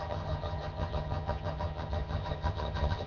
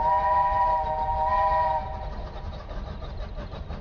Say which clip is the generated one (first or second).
first